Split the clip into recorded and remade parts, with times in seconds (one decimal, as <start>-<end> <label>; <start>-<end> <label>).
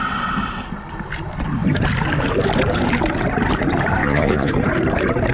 0.0-4.0 recorded; 4.0-4.5 remade; 4.5-5.3 recorded